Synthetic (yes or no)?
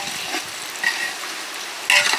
no